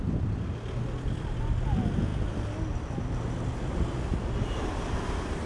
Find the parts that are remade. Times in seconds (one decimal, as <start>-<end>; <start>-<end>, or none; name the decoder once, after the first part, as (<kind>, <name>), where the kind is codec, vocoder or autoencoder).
none